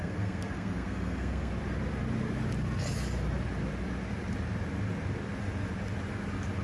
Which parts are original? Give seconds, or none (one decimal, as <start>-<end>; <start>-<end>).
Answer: 1.5-6.6